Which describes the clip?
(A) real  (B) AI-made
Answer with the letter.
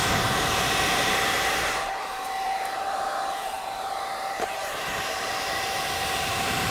B